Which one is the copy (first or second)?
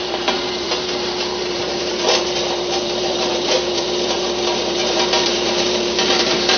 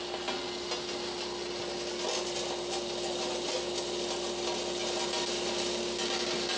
first